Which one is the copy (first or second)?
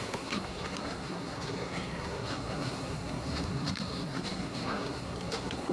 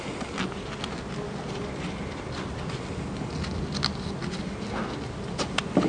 first